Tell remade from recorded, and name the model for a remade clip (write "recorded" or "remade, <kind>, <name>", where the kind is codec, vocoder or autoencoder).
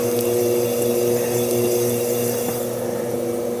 recorded